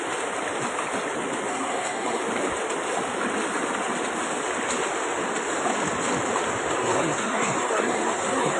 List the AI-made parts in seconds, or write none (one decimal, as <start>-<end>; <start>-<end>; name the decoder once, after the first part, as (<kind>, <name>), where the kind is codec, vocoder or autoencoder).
1.5-2.2 (codec, SNAC); 6.8-8.6